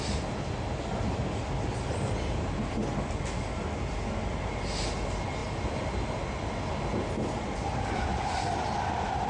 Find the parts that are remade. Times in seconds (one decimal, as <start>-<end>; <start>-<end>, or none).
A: none